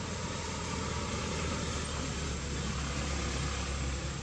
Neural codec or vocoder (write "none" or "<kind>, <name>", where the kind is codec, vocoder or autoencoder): none